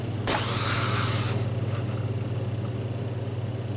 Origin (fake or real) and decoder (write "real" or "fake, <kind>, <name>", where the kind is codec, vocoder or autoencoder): real